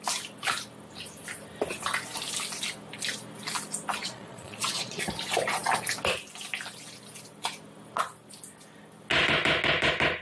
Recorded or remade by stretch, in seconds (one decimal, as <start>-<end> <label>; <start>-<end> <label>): 0.0-4.0 recorded; 4.0-5.0 remade; 5.0-10.2 recorded